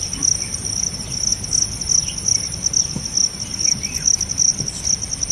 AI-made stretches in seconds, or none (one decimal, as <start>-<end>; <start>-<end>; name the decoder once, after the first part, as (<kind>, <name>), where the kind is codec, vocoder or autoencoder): none